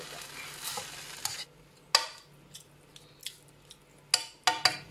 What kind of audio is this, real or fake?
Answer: real